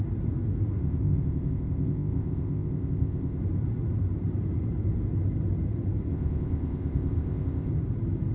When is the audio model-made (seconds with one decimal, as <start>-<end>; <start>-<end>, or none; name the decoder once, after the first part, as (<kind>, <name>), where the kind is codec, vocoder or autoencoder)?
0.8-3.4 (codec, ZipCodec); 6.1-7.7